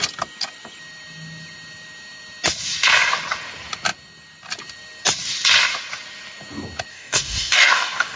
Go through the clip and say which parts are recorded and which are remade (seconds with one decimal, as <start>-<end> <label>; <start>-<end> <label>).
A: 0.0-6.9 recorded; 6.9-8.2 remade